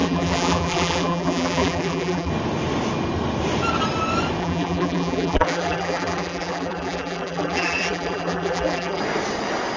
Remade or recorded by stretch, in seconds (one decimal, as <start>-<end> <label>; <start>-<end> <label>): 0.0-2.3 remade; 2.3-4.4 recorded; 4.4-9.0 remade; 9.0-9.8 recorded

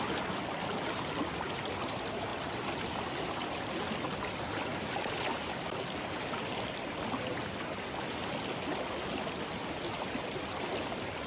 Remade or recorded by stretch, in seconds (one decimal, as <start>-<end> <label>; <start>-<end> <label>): 0.0-11.3 recorded

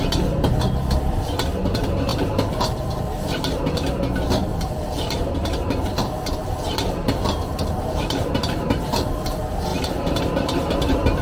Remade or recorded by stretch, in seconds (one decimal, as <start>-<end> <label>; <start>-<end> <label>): 0.0-2.1 recorded; 2.1-3.6 remade; 3.6-4.5 recorded; 4.5-8.3 remade; 8.3-9.7 recorded; 9.7-10.2 remade; 10.2-11.2 recorded

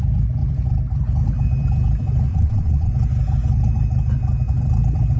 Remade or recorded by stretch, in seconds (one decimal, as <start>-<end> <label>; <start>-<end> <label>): 0.0-2.3 recorded; 2.3-2.9 remade; 2.9-5.2 recorded